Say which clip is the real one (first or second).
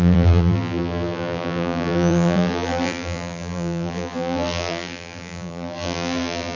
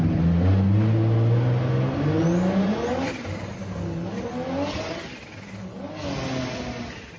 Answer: second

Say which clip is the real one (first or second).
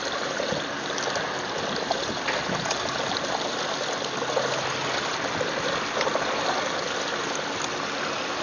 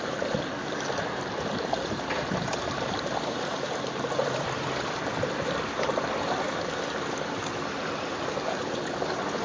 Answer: first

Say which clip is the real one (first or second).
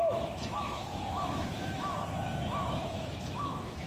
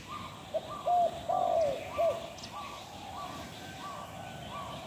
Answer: second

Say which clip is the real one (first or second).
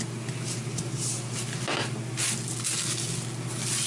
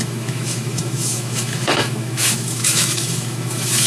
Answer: first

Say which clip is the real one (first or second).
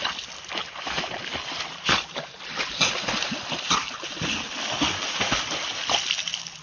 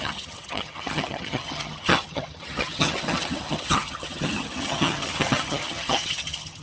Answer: first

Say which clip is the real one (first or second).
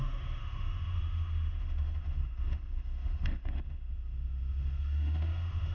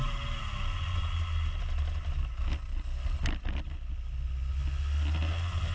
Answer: second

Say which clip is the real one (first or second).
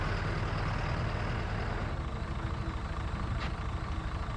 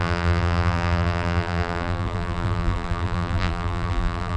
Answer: first